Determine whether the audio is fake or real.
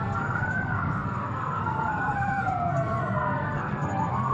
fake